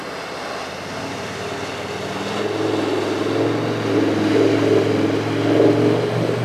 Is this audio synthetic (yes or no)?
no